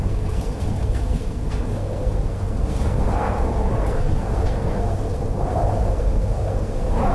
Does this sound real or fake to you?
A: fake